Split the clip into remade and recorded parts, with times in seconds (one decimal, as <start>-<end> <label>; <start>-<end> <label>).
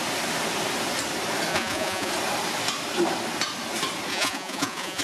0.0-1.5 recorded; 1.5-2.1 remade; 2.1-4.1 recorded; 4.1-5.0 remade